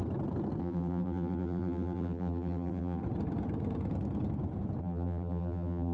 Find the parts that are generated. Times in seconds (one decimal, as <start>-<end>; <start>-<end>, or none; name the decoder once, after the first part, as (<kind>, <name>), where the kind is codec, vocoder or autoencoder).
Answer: 0.6-3.0 (vocoder, BigVGAN v2); 4.8-5.9